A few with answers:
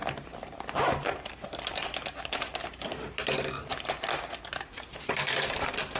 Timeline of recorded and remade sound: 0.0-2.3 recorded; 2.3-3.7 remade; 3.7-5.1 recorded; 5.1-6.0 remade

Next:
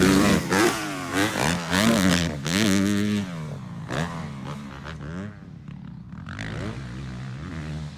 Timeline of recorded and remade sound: 0.0-1.1 remade; 1.1-5.9 recorded; 5.9-8.0 remade

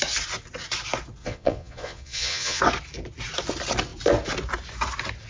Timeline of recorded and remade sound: 0.0-1.2 recorded; 1.2-2.6 remade; 2.6-5.3 recorded

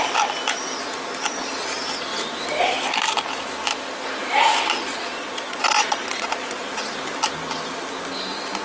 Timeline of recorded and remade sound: 0.0-4.9 recorded; 4.9-6.8 remade; 6.8-8.6 recorded

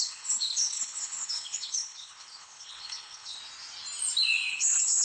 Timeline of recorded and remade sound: 0.0-3.4 remade; 3.4-4.5 recorded; 4.5-5.0 remade

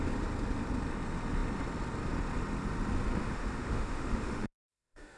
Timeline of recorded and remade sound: 0.0-3.2 recorded; 3.2-5.2 remade